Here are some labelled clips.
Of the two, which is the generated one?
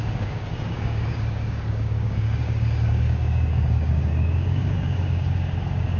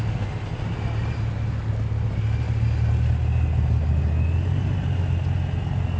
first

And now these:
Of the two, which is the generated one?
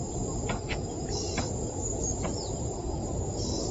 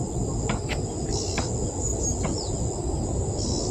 first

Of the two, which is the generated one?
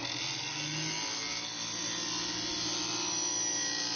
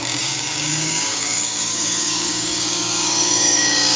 second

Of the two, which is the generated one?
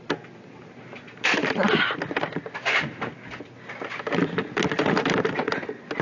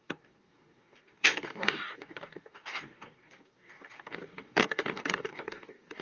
second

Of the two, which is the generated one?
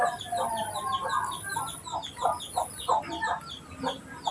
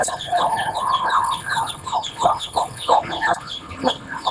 second